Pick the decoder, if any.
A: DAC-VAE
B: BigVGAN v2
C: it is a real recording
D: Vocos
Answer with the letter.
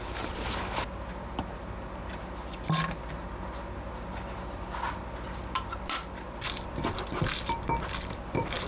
B